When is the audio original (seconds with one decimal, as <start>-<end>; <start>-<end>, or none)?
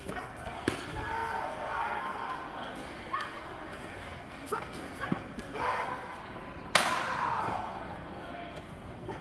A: 6.4-7.4